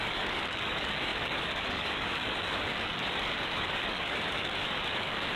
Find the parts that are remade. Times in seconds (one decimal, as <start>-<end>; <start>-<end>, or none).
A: 0.0-5.4